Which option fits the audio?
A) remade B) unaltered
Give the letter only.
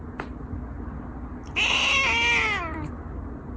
B